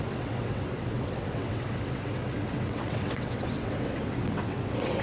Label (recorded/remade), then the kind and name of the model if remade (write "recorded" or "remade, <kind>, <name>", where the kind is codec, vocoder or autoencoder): remade, vocoder, WaveNeXt